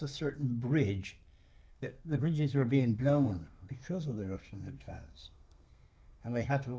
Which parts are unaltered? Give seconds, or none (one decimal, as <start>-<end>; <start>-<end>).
0.5-1.7